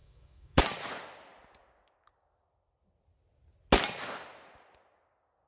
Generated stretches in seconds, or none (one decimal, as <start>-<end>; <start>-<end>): 0.0-0.6